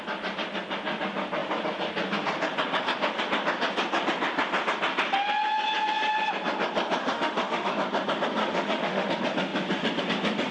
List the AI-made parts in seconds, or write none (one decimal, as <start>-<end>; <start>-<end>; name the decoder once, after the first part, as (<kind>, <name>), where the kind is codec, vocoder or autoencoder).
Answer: 7.0-7.7 (autoencoder, DAC-VAE); 8.4-9.1